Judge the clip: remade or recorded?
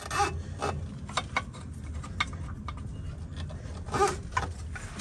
recorded